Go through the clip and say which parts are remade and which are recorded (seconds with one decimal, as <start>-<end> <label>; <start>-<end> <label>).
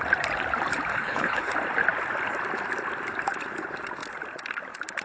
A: 0.0-0.9 recorded; 0.9-1.5 remade; 1.5-5.0 recorded